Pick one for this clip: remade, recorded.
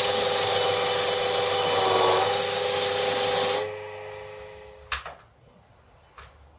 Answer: recorded